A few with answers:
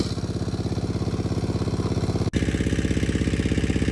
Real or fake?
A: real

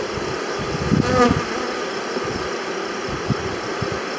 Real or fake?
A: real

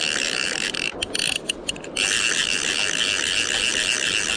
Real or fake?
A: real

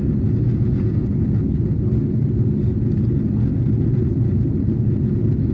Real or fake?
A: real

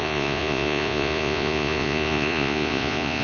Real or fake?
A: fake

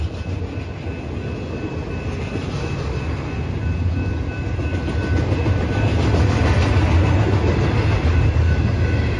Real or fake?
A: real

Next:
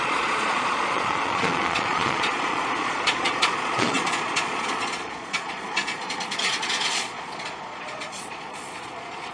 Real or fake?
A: fake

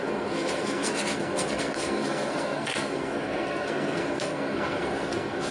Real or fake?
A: fake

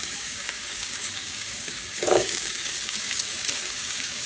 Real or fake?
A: fake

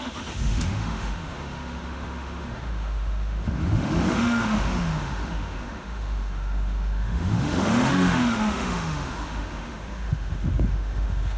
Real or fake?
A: fake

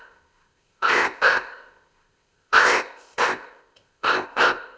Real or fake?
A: fake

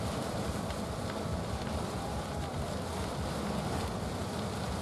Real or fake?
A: real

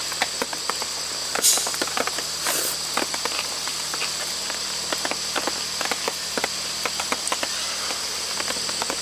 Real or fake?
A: real